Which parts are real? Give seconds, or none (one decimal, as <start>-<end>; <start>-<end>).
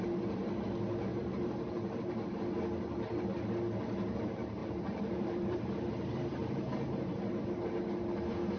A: 0.0-1.1; 2.4-4.6; 5.9-6.4; 7.2-8.6